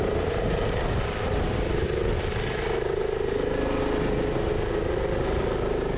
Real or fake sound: real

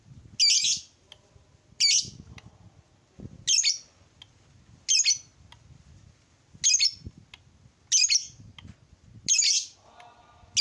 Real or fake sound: real